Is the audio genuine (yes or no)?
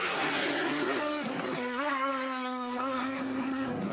no